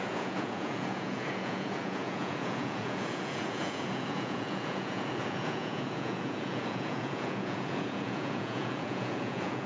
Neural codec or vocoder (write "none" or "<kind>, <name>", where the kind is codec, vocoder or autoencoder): vocoder, Vocos